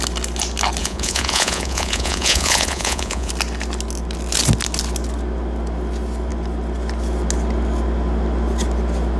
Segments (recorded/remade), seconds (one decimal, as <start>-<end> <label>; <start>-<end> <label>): 0.0-0.8 recorded; 0.8-3.3 remade; 3.3-9.2 recorded